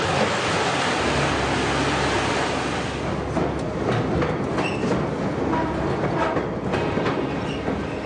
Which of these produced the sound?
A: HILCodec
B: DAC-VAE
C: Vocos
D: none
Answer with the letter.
D